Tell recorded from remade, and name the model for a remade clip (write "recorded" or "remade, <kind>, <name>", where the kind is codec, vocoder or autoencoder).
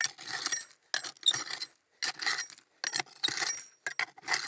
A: recorded